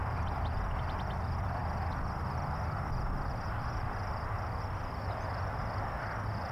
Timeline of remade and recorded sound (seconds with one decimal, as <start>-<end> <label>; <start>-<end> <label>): 0.0-1.2 remade; 1.2-1.6 recorded; 1.6-5.5 remade; 5.5-6.5 recorded